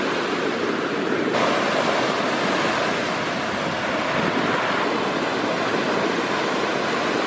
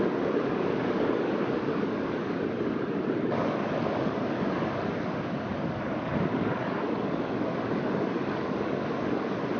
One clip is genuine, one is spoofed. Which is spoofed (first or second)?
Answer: second